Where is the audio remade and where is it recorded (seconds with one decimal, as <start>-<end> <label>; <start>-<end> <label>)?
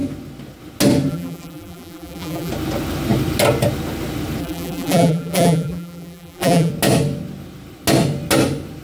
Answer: 0.0-1.1 recorded; 1.1-2.5 remade; 2.5-4.4 recorded; 4.4-6.7 remade; 6.7-8.8 recorded